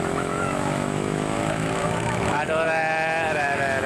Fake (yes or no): yes